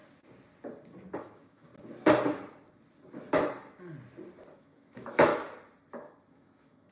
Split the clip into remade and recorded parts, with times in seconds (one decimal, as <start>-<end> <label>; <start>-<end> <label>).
0.0-1.2 recorded; 1.2-1.7 remade; 1.7-4.6 recorded; 4.6-5.3 remade; 5.3-6.3 recorded; 6.3-6.9 remade

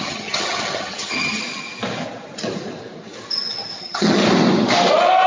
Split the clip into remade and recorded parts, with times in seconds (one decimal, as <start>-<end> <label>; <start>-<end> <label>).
0.0-1.4 remade; 1.4-3.8 recorded; 3.8-4.2 remade; 4.2-5.3 recorded

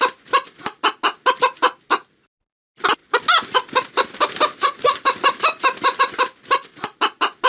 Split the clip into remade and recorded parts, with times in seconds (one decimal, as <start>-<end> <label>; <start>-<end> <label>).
0.0-7.5 recorded

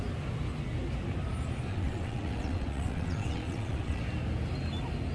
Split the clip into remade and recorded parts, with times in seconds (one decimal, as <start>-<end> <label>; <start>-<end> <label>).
0.0-1.7 recorded; 1.7-4.0 remade; 4.0-5.1 recorded

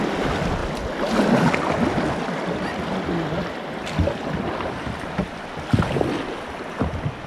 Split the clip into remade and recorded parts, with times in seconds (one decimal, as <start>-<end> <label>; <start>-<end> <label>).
0.0-7.3 recorded

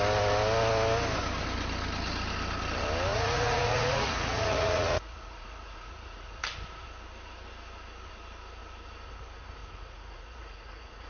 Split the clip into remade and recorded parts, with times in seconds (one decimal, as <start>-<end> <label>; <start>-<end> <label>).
0.0-3.1 recorded; 3.1-6.4 remade; 6.4-9.6 recorded; 9.6-11.1 remade

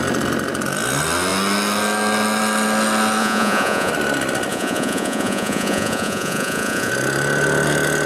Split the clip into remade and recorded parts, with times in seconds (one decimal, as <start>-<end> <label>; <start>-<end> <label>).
0.0-3.2 recorded; 3.2-3.9 remade; 3.9-4.5 recorded; 4.5-6.9 remade; 6.9-8.1 recorded